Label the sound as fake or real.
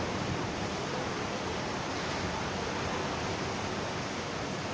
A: real